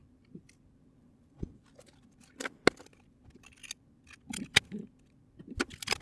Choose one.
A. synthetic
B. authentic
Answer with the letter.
B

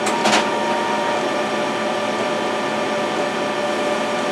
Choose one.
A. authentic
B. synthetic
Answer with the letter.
A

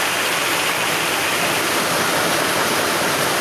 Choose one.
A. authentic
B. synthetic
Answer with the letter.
B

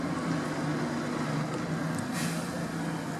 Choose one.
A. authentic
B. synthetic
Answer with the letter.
A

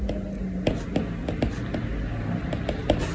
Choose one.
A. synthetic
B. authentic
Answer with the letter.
B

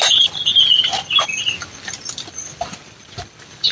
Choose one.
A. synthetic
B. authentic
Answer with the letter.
B